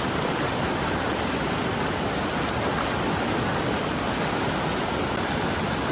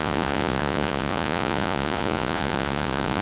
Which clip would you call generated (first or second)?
second